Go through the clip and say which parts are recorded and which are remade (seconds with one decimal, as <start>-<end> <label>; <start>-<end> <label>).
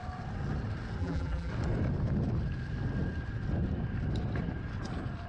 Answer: 0.0-1.0 recorded; 1.0-1.5 remade; 1.5-5.3 recorded